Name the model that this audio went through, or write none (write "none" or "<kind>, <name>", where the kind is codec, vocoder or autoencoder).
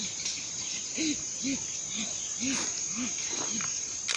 none